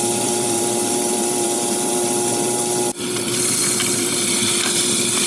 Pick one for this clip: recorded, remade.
remade